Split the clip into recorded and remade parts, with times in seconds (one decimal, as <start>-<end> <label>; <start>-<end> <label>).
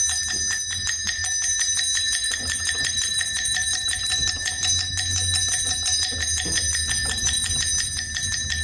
0.0-2.2 recorded; 2.2-4.7 remade; 4.7-7.0 recorded; 7.0-7.5 remade; 7.5-8.6 recorded